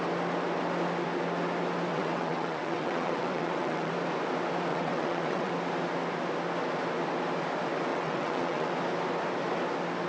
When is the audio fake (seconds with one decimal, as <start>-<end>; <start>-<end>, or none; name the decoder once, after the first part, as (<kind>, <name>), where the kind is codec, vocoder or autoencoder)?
1.9-3.9 (vocoder, WaveNeXt); 4.7-5.5; 7.9-8.7